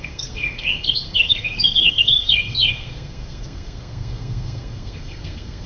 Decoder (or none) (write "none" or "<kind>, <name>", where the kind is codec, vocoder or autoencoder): codec, SNAC